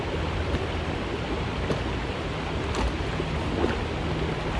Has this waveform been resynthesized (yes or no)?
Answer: no